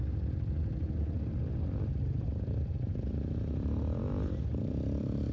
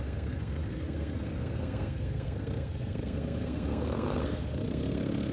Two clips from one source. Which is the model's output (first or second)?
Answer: second